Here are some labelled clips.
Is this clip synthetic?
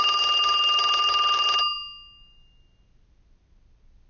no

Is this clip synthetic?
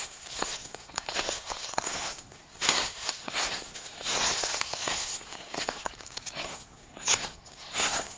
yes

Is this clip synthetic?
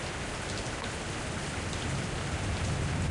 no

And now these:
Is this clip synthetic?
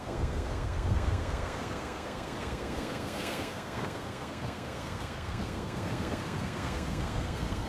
yes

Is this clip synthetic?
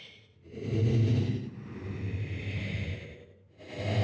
no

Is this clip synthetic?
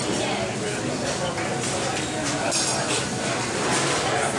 no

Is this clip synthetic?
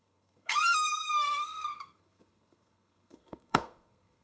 yes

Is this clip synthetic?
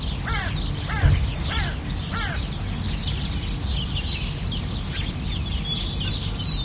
no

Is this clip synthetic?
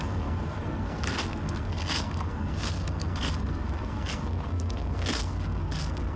yes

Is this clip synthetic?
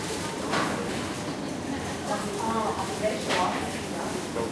no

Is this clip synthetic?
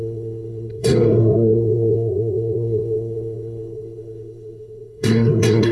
yes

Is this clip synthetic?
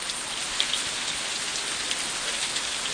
no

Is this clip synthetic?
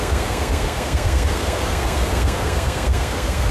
yes